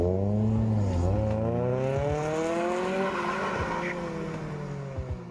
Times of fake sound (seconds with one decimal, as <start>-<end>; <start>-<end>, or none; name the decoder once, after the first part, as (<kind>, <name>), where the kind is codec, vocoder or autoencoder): none